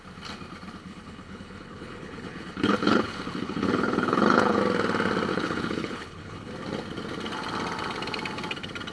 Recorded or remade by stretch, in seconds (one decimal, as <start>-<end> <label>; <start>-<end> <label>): 0.0-0.8 recorded; 0.8-4.6 remade; 4.6-5.3 recorded; 5.3-6.5 remade; 6.5-8.9 recorded